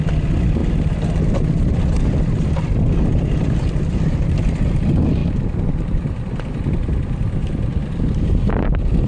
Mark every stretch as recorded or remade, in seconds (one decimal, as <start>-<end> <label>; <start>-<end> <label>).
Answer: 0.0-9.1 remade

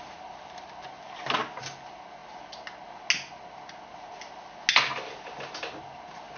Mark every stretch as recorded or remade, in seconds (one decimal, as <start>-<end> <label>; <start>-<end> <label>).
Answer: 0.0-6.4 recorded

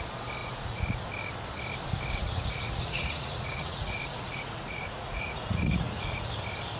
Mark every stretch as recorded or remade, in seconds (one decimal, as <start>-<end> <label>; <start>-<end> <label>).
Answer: 0.0-0.4 recorded; 0.4-1.0 remade; 1.0-2.2 recorded; 2.2-6.3 remade; 6.3-6.8 recorded